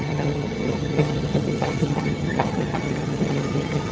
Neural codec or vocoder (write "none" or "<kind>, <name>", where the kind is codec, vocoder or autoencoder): vocoder, HiFi-GAN